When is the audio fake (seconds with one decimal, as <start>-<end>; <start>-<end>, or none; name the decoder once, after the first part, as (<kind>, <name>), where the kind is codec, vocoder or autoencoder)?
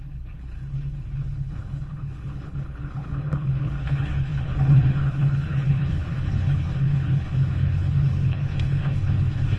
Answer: 0.0-9.6 (codec, HILCodec)